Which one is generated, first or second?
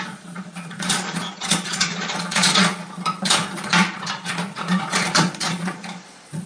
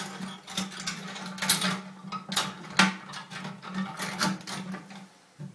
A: first